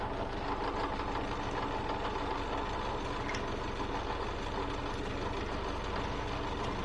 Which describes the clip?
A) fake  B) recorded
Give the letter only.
B